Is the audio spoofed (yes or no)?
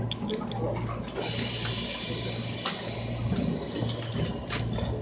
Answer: no